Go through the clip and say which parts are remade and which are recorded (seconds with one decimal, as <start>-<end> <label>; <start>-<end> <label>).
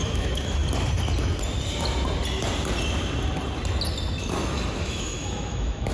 0.0-0.6 remade; 0.6-4.1 recorded; 4.1-5.9 remade